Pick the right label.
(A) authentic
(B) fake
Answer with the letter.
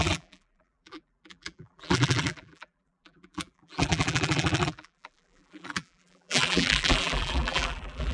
B